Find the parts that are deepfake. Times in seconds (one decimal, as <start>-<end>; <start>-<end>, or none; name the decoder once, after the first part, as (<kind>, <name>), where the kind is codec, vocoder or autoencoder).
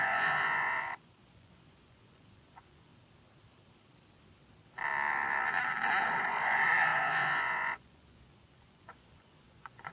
0.0-2.9 (vocoder, Vocos); 6.0-9.9